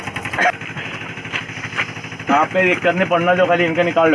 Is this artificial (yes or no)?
no